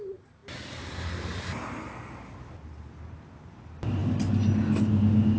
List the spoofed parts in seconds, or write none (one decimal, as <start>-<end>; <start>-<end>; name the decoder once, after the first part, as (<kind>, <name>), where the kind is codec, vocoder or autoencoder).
none